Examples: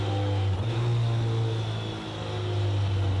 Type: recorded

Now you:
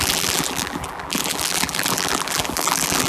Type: remade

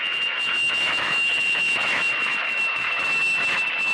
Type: remade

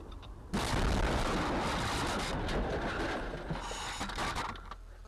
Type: recorded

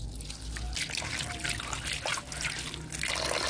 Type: recorded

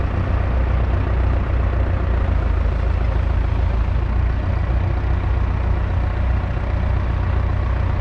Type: recorded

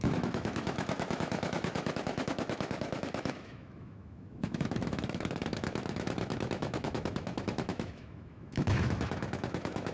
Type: remade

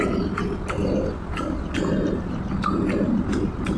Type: recorded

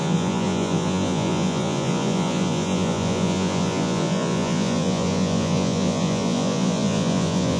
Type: remade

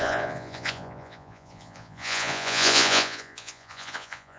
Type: remade